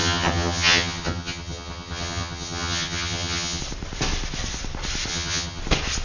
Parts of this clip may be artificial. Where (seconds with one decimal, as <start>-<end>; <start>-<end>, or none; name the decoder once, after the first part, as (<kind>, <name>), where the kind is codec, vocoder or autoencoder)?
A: 0.0-3.6 (vocoder, HiFi-GAN); 5.1-5.6